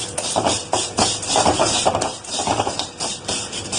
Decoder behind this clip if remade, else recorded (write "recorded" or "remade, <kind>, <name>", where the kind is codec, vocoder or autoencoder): recorded